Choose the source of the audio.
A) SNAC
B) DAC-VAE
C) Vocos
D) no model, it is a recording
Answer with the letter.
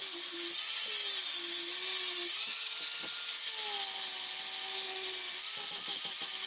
D